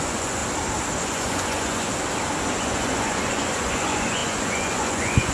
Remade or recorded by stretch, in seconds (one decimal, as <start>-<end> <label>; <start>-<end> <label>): 0.0-0.4 remade; 0.4-1.0 recorded; 1.0-1.9 remade; 1.9-2.6 recorded; 2.6-5.3 remade